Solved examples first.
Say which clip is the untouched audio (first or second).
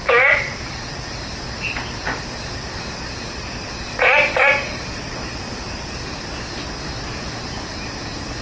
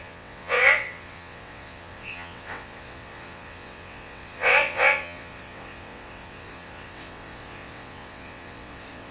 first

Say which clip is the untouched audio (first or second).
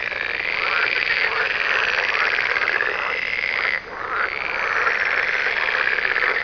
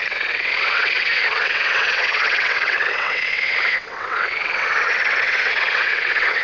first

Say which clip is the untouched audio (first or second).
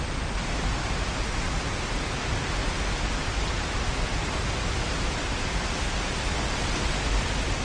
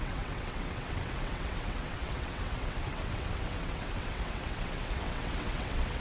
first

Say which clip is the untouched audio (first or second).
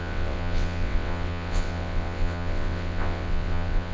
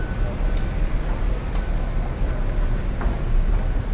second